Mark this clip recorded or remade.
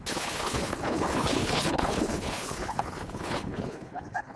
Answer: remade